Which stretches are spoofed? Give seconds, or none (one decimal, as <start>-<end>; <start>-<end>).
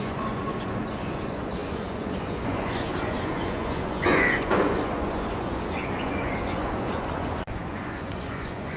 0.0-8.8